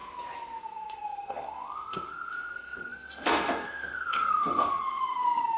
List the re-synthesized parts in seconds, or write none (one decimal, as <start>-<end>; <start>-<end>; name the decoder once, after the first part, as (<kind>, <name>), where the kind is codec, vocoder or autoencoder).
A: 0.6-5.6 (codec, SNAC)